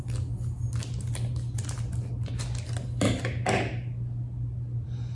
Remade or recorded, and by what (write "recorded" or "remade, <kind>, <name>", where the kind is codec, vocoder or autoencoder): recorded